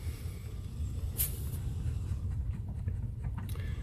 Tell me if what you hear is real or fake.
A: real